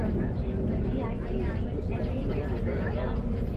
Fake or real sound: real